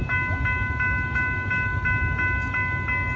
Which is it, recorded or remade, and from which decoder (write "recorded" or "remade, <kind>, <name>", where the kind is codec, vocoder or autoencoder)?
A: recorded